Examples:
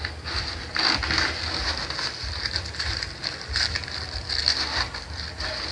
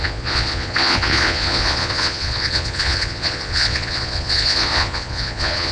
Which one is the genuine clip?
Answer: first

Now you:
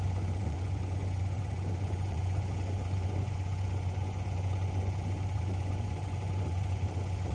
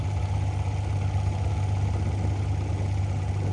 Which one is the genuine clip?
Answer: second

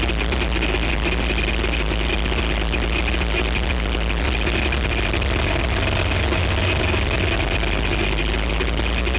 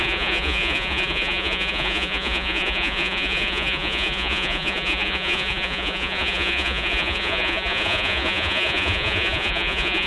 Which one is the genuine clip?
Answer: first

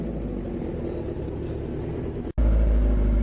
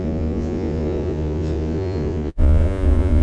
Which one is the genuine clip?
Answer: first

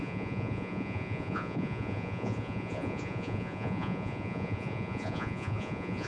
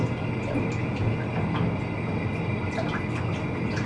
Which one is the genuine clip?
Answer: second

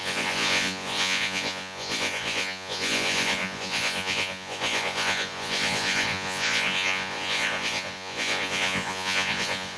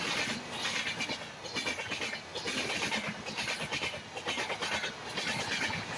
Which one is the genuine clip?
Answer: second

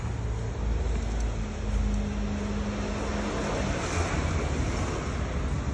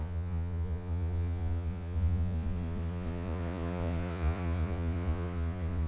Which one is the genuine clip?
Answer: first